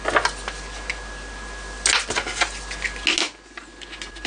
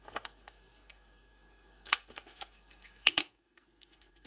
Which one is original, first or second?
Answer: first